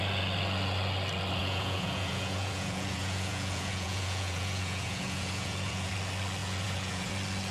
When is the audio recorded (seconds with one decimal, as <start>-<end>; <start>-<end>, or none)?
0.0-1.4; 5.9-6.4; 7.1-7.5